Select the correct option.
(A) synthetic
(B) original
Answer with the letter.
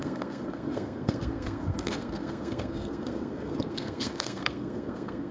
A